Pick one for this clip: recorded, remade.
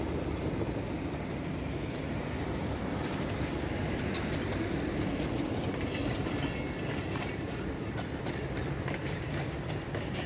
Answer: remade